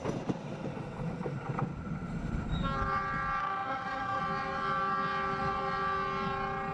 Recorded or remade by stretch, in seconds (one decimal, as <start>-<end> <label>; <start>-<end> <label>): 0.0-3.4 recorded; 3.4-4.2 remade; 4.2-6.7 recorded